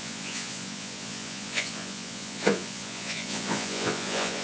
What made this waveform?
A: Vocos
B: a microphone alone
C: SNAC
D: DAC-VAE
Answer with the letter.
A